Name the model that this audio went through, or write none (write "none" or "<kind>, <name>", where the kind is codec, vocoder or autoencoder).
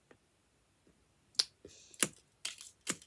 none